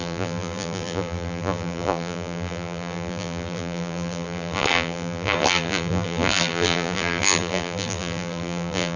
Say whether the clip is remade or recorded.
remade